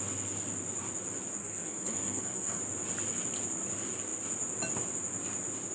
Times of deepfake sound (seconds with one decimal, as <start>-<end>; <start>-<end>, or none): 1.4-2.6